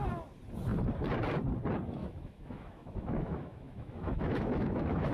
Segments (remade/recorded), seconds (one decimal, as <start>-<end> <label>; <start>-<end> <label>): 0.0-2.0 recorded; 2.0-5.1 remade